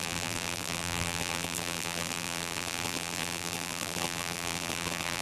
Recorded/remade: remade